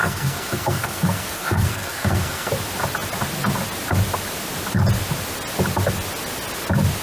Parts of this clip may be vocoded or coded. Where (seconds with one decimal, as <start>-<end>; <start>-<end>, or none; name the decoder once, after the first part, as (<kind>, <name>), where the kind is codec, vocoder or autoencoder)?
0.0-2.5 (codec, SNAC)